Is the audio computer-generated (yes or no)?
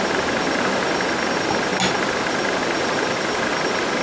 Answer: no